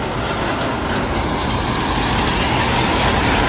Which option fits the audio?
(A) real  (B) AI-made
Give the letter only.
A